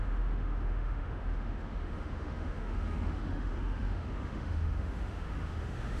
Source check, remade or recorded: remade